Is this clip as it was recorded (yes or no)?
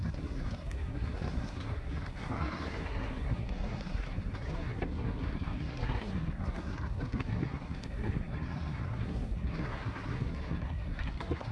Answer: no